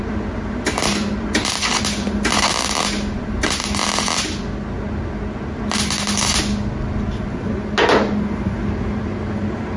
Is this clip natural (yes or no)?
yes